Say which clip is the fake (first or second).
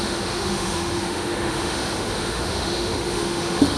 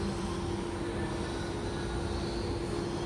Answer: first